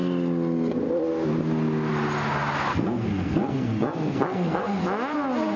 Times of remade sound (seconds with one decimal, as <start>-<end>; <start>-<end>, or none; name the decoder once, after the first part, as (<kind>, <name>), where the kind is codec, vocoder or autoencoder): 2.7-4.8 (codec, SNAC)